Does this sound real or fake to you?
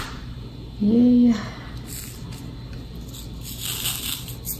real